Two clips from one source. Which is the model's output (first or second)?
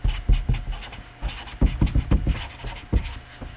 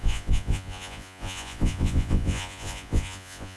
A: second